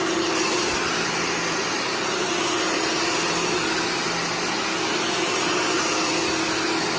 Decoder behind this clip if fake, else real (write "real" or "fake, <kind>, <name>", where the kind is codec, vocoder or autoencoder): real